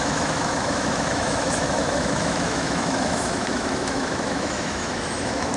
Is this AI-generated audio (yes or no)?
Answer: yes